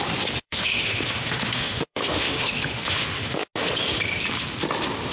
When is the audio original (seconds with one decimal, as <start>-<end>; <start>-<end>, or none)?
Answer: 0.0-0.4; 3.5-5.1